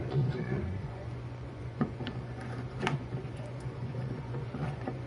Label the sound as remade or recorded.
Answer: remade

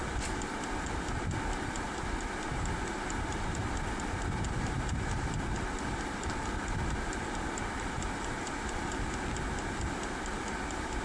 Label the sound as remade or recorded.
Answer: recorded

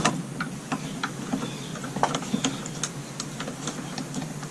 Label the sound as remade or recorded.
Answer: recorded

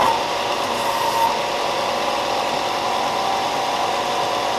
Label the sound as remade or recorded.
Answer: recorded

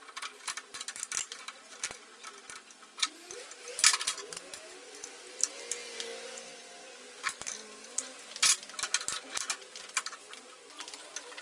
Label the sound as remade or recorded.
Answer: recorded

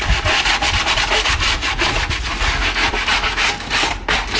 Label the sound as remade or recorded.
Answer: recorded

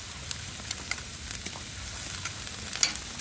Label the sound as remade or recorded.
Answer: recorded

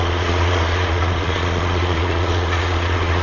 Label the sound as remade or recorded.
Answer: remade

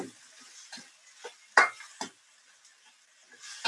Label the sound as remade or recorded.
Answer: recorded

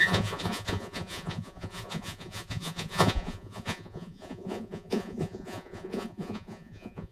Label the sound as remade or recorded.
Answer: remade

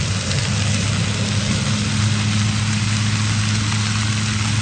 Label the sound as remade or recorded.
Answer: recorded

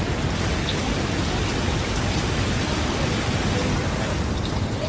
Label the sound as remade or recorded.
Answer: recorded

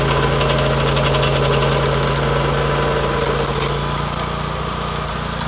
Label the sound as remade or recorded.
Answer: recorded